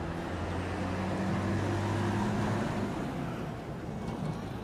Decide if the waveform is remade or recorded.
recorded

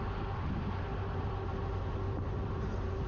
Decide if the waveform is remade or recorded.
recorded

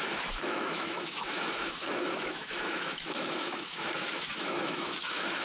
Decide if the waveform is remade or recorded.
remade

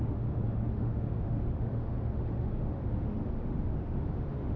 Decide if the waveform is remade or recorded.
remade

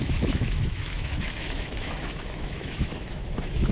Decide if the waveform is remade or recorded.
remade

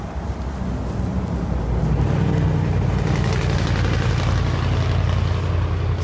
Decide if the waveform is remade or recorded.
recorded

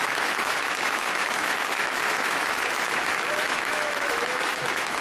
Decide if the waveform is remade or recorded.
remade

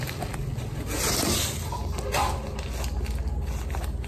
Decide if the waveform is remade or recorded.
recorded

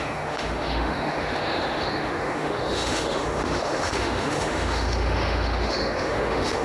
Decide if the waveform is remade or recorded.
remade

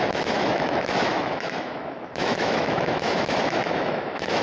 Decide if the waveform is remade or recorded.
remade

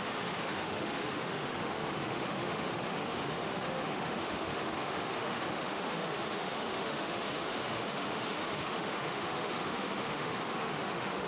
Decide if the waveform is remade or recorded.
remade